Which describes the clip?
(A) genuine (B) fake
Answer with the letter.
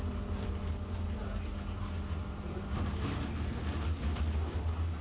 A